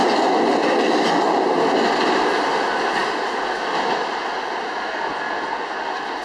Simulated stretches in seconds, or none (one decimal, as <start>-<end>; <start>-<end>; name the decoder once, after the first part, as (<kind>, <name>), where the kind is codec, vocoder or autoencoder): none